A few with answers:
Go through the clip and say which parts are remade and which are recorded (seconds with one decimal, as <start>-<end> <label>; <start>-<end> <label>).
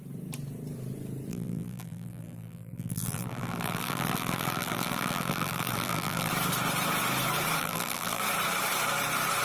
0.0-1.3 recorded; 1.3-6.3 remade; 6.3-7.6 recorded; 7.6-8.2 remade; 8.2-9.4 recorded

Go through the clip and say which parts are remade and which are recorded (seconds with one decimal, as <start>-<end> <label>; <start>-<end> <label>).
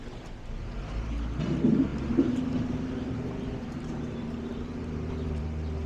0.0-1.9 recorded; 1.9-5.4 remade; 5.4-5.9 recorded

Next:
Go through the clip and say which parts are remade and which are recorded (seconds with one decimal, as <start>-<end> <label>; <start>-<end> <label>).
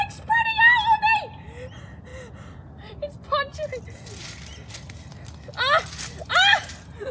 0.0-3.5 recorded; 3.5-4.0 remade; 4.0-6.2 recorded; 6.2-7.1 remade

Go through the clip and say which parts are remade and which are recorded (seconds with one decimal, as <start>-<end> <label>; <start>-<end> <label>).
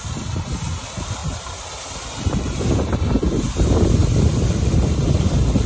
0.0-1.2 recorded; 1.2-1.7 remade; 1.7-4.0 recorded; 4.0-4.7 remade; 4.7-5.7 recorded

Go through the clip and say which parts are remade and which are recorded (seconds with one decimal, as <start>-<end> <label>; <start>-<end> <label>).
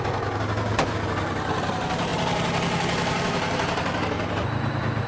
0.0-5.1 recorded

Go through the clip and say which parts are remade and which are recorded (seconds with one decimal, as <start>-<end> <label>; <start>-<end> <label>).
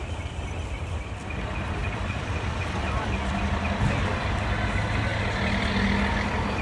0.0-1.8 recorded; 1.8-3.2 remade; 3.2-6.6 recorded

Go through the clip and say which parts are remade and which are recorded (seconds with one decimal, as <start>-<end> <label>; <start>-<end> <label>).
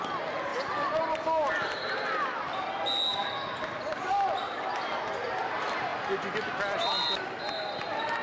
0.0-8.2 recorded